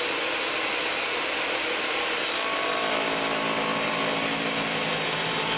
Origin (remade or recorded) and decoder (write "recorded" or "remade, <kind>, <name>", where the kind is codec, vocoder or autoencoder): recorded